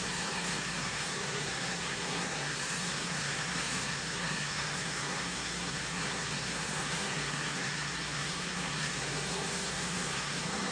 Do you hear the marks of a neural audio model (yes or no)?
yes